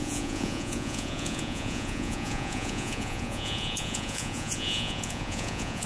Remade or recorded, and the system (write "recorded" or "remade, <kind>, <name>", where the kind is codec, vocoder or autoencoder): remade, vocoder, Vocos